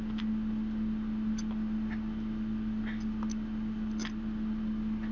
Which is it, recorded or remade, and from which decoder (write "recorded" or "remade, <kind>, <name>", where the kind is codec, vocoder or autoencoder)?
recorded